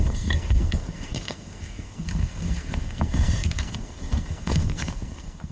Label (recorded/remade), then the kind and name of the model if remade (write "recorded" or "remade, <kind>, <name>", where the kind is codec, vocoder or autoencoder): remade, codec, SNAC